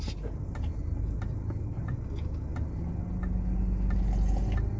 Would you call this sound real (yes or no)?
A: yes